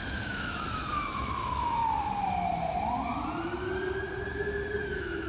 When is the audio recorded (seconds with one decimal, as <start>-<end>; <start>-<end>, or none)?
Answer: 1.8-4.8